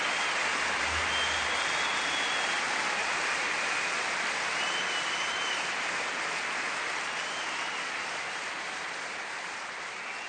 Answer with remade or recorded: recorded